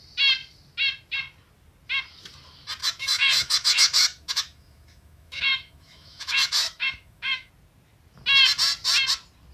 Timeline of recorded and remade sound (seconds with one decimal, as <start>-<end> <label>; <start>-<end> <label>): 0.0-2.8 recorded; 2.8-7.5 remade; 7.5-9.5 recorded